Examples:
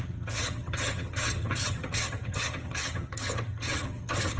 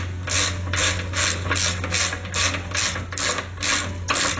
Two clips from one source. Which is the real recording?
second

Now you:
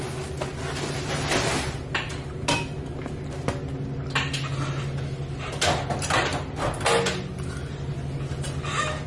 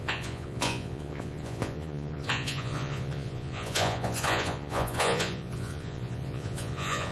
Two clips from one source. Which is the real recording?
first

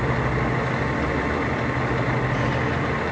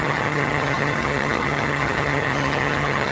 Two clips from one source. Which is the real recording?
first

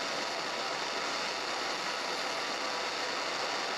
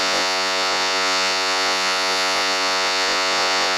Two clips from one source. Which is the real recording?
first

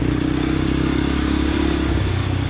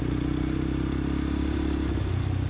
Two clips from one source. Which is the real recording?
second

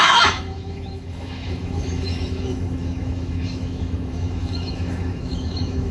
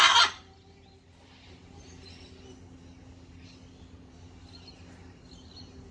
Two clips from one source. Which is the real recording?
second